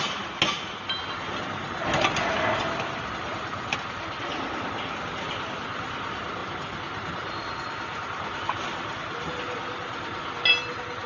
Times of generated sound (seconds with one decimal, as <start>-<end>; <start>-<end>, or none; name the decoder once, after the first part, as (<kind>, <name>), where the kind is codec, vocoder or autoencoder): none